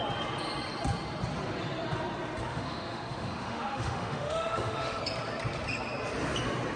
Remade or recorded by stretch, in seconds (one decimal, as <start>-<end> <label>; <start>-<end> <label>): 0.0-2.5 recorded; 2.5-5.0 remade; 5.0-6.8 recorded